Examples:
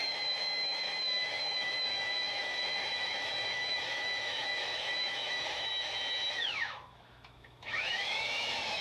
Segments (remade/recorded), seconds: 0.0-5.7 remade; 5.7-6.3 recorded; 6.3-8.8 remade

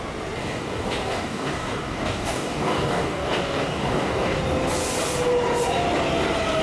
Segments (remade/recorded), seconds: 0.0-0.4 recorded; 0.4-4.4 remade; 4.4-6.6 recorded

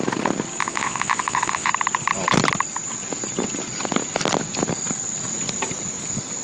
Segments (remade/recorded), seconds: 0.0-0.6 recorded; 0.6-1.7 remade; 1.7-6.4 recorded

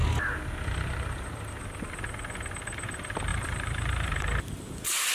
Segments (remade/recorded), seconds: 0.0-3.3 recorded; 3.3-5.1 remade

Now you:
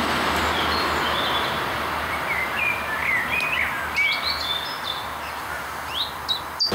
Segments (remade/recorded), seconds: 0.0-6.7 recorded